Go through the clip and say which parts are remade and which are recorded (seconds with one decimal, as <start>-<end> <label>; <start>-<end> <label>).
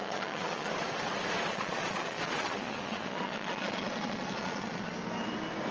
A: 0.0-0.7 remade; 0.7-1.5 recorded; 1.5-4.9 remade; 4.9-5.7 recorded